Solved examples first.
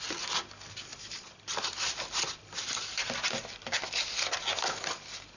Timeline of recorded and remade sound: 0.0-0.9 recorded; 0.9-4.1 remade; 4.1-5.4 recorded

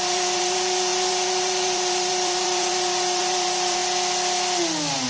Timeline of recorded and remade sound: 0.0-3.8 remade; 3.8-5.1 recorded

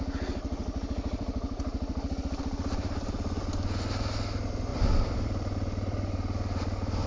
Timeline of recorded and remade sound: 0.0-0.6 recorded; 0.6-2.4 remade; 2.4-4.7 recorded; 4.7-7.1 remade

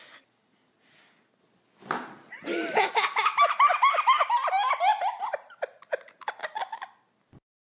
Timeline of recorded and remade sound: 0.0-7.6 recorded

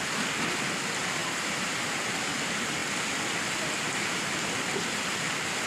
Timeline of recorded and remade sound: 0.0-1.2 recorded; 1.2-2.3 remade; 2.3-5.7 recorded

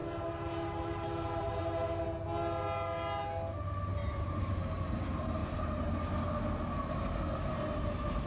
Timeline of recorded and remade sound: 0.0-1.6 remade; 1.6-3.9 recorded; 3.9-4.5 remade; 4.5-5.4 recorded; 5.4-5.9 remade; 5.9-8.3 recorded

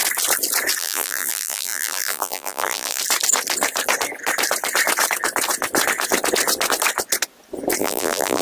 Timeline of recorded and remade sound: 0.0-0.8 recorded; 0.8-3.0 remade; 3.0-7.8 recorded; 7.8-8.4 remade

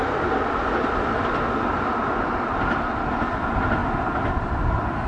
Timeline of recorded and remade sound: 0.0-5.1 recorded